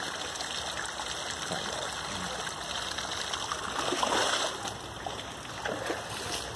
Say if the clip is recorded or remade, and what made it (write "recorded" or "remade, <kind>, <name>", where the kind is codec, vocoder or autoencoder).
recorded